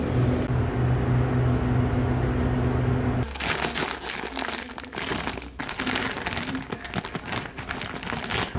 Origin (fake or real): real